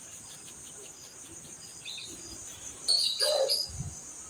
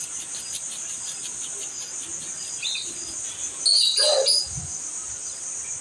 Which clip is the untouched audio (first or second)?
second